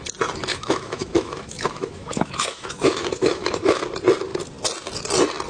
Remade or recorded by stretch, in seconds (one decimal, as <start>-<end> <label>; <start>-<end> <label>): 0.0-0.5 recorded; 0.5-3.8 remade; 3.8-5.5 recorded